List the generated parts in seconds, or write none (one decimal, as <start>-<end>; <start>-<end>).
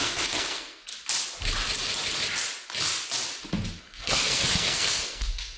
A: 0.0-0.9; 3.8-5.6